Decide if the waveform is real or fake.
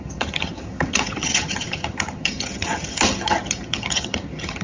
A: fake